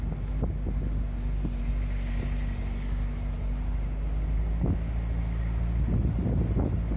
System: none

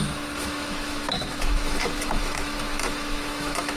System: autoencoder, DAC-VAE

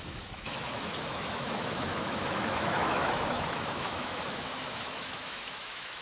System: autoencoder, DAC-VAE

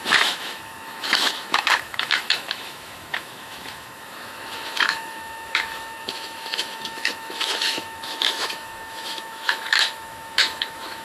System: autoencoder, DAC-VAE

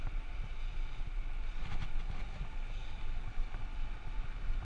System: none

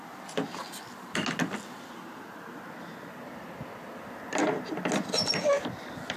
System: none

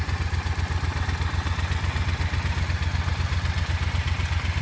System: none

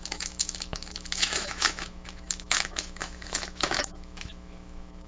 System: autoencoder, DAC-VAE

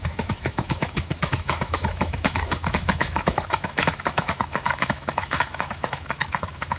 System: autoencoder, DAC-VAE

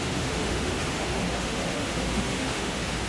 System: autoencoder, DAC-VAE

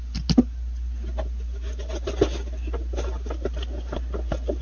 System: none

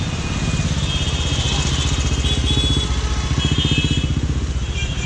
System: none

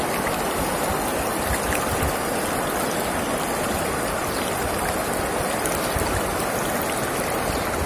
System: none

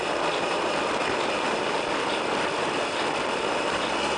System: none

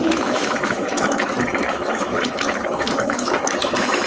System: autoencoder, DAC-VAE